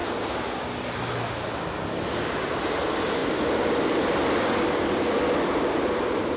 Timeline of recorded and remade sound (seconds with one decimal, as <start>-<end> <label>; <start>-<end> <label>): 0.0-6.4 recorded